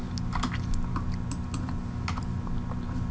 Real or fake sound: real